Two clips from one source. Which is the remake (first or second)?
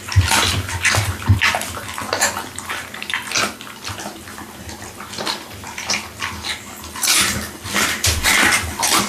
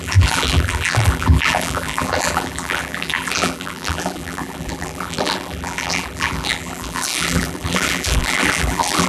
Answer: second